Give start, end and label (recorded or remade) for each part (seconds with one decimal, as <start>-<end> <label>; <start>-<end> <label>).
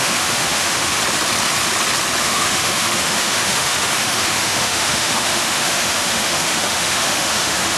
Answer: 0.0-1.0 remade; 1.0-2.2 recorded; 2.2-7.8 remade